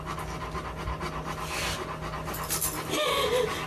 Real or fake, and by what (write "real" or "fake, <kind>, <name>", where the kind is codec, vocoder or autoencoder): real